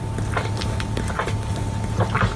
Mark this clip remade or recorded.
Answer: recorded